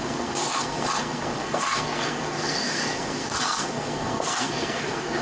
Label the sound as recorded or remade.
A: remade